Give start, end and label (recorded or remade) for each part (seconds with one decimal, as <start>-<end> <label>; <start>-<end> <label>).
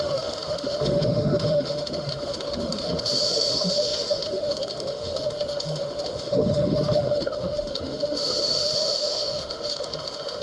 0.0-10.4 remade